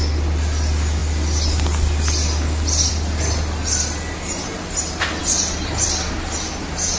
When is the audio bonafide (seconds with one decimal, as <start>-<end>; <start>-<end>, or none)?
0.0-7.0